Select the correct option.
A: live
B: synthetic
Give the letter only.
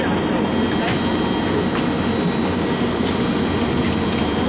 A